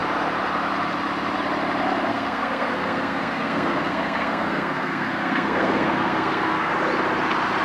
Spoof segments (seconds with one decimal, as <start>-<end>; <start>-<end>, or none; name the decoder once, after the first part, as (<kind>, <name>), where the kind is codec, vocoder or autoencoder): 2.1-6.7 (codec, SNAC)